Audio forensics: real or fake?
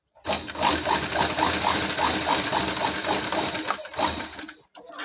real